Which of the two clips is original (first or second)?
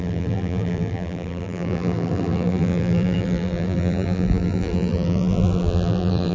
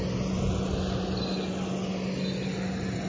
second